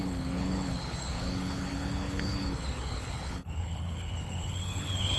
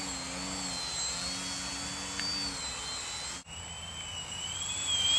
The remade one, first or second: first